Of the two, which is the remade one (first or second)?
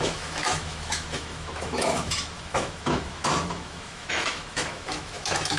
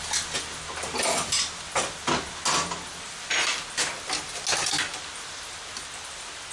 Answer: first